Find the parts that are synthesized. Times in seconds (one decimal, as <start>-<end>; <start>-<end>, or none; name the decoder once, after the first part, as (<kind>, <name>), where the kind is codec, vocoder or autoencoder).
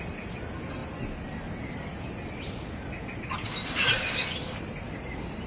none